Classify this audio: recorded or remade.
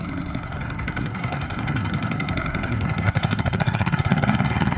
remade